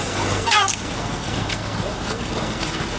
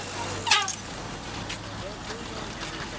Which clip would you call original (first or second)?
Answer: second